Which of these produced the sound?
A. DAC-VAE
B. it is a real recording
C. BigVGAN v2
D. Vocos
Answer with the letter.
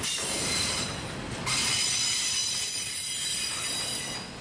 B